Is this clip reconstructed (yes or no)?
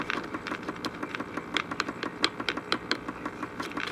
yes